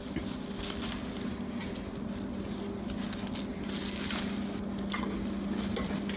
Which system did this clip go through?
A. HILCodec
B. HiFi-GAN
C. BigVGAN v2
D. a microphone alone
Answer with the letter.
D